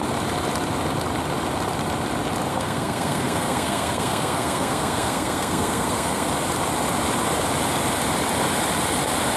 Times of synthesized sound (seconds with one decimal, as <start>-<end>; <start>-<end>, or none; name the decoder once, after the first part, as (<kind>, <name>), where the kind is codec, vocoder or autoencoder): 2.5-6.3 (codec, SNAC)